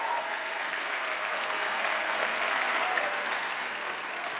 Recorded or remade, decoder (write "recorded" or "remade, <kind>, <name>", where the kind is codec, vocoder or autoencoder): remade, codec, SNAC